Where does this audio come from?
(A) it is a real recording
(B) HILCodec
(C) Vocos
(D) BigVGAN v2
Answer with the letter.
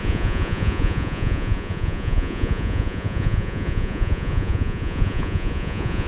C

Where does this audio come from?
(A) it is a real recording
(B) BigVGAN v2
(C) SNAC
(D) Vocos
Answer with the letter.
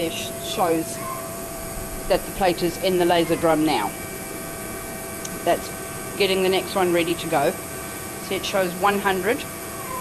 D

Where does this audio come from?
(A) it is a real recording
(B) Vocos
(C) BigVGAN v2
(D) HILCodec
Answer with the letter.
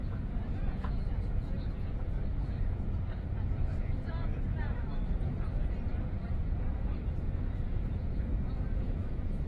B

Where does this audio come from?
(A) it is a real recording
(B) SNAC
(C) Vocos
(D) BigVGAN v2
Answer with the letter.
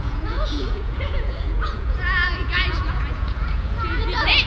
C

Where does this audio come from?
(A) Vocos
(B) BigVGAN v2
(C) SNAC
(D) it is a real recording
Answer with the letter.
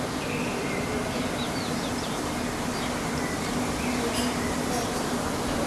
D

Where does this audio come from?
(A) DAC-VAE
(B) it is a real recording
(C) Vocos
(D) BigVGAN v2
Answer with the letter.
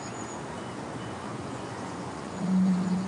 C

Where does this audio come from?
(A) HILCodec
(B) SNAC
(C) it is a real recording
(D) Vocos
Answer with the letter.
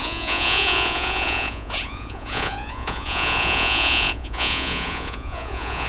D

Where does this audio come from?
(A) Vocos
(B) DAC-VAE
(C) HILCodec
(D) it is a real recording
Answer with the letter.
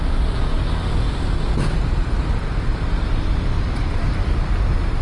D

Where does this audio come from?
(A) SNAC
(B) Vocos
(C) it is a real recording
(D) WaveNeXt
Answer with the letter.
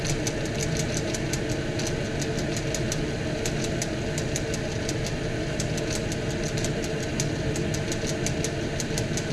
C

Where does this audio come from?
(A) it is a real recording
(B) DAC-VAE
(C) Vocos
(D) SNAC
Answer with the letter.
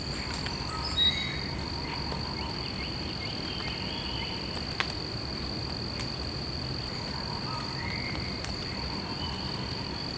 A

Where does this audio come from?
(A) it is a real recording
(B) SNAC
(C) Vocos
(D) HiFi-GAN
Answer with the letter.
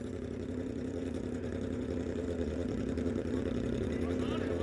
C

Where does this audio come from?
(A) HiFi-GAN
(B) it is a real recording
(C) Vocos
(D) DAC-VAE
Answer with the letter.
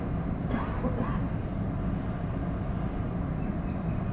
B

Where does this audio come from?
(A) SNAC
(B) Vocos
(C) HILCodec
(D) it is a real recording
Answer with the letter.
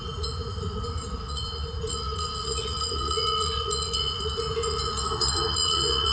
B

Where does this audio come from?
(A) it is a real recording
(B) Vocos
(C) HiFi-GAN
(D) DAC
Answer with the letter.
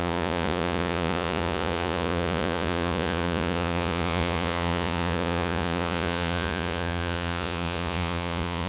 B